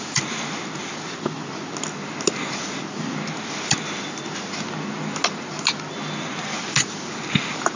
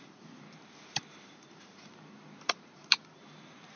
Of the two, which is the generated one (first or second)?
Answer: second